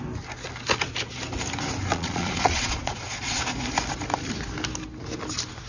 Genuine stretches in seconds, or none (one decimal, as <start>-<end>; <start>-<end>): 0.0-1.9; 3.4-5.7